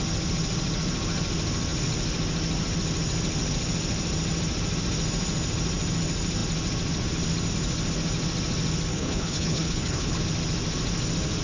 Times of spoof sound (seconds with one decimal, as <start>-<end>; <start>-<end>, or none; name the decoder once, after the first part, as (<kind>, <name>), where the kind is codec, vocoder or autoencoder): 8.9-10.2 (codec, HILCodec)